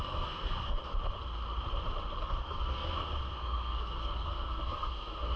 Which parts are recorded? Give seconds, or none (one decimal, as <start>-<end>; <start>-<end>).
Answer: 0.9-2.4